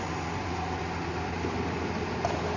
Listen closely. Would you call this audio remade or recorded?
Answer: recorded